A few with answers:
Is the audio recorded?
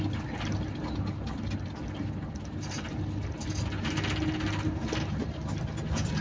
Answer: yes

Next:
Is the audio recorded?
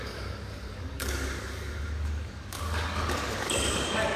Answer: no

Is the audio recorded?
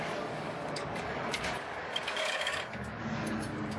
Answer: no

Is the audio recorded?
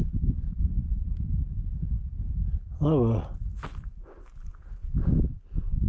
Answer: yes